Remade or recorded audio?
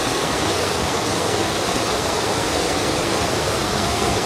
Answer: remade